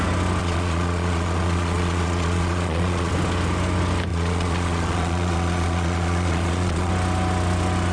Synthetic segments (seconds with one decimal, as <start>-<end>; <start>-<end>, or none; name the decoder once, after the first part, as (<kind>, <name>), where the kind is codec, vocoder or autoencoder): 0.4-3.1 (vocoder, Vocos); 4.1-6.9